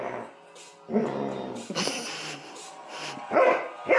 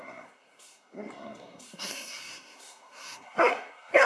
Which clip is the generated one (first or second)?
second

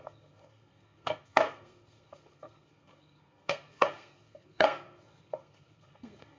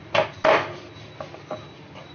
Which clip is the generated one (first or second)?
first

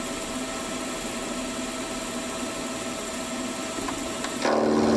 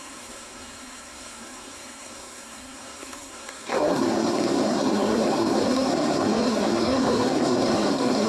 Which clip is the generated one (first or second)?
second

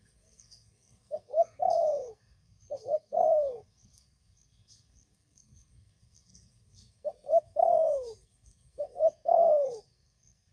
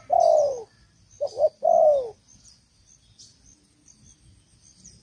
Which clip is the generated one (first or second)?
first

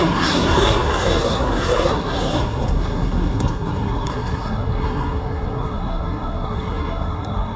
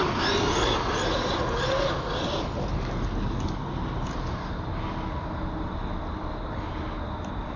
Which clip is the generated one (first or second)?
first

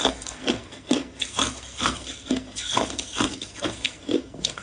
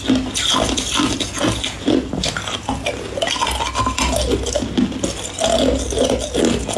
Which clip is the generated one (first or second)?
first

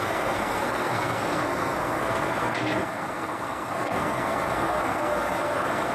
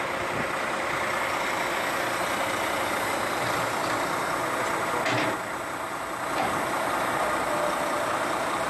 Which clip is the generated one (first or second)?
first